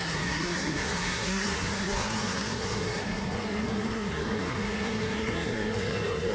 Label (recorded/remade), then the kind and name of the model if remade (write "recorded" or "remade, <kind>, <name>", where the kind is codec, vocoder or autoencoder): remade, codec, SNAC